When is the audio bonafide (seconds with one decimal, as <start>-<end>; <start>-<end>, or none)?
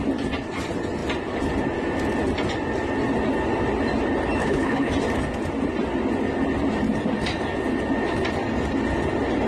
0.0-4.4; 4.9-9.5